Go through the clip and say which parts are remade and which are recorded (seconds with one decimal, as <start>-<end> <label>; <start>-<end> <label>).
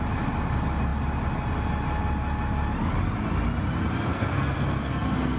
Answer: 0.0-4.1 recorded; 4.1-5.4 remade